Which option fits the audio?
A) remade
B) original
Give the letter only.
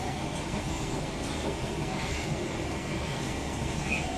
A